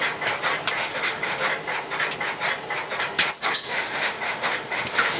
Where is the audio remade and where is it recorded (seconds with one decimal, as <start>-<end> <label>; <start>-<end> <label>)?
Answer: 0.0-0.8 recorded; 0.8-1.4 remade; 1.4-3.4 recorded; 3.4-5.2 remade